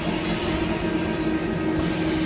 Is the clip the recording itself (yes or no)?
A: yes